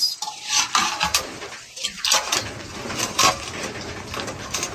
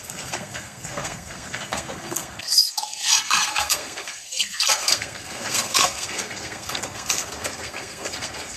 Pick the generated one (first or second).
second